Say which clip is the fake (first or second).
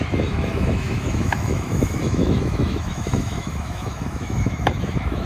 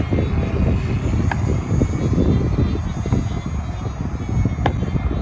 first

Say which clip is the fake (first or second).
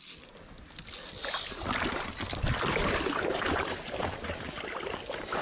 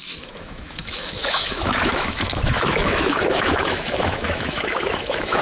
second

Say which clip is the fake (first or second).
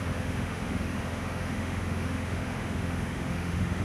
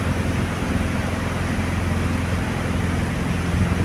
first